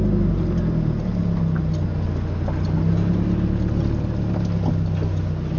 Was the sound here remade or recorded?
recorded